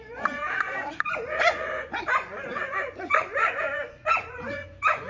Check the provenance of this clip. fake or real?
fake